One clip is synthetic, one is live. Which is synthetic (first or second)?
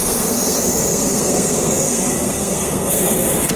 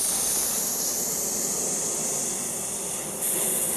first